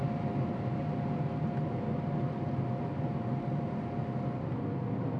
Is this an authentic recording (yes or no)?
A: yes